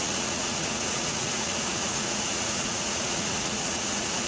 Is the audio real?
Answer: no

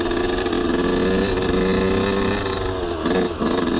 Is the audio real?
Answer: yes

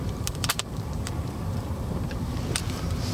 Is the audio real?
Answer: no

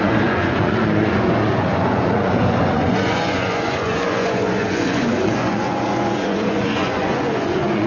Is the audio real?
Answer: no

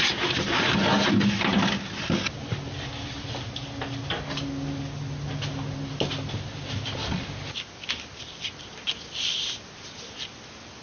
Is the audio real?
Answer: yes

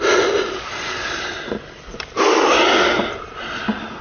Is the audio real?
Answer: yes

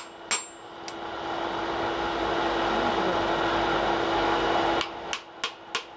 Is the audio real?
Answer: yes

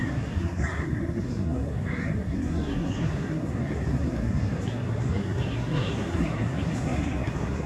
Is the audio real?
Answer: no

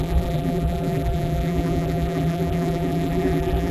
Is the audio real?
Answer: no